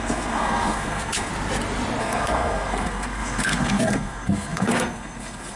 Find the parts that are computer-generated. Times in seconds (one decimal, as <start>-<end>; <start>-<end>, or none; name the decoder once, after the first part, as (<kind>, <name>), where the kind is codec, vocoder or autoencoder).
0.0-1.3 (codec, SNAC); 2.0-5.6